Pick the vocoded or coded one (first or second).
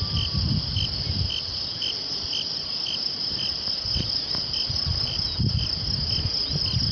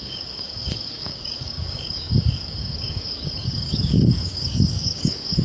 second